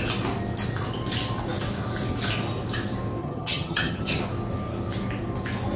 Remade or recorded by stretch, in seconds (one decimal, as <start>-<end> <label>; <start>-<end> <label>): 0.0-3.2 recorded; 3.2-4.2 remade; 4.2-5.8 recorded